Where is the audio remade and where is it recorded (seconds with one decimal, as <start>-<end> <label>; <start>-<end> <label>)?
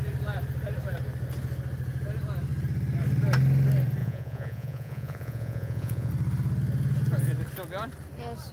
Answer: 0.0-4.0 recorded; 4.0-6.1 remade; 6.1-8.5 recorded